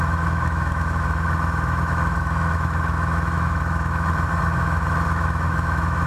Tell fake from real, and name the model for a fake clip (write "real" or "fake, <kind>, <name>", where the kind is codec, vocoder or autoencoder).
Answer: fake, autoencoder, DAC-VAE